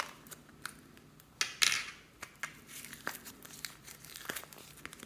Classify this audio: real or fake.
real